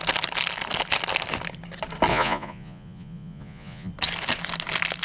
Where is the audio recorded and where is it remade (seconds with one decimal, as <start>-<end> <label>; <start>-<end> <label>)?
0.0-2.1 recorded; 2.1-3.9 remade; 3.9-5.0 recorded